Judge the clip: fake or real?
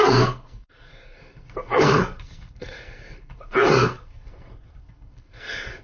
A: fake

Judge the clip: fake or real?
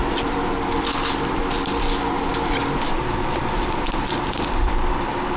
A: fake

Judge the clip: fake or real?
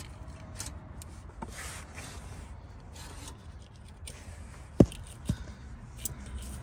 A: real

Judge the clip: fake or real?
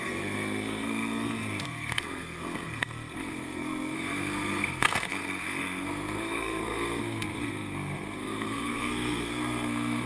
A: fake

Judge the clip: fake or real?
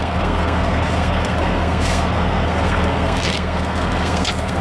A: fake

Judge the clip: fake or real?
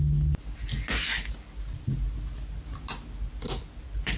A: real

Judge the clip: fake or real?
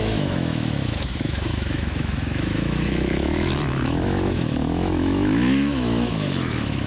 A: fake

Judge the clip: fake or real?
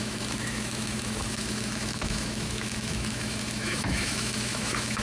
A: fake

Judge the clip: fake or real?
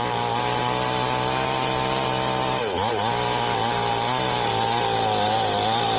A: real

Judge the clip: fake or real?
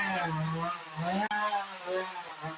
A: real